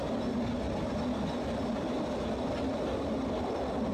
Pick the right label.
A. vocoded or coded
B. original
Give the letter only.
B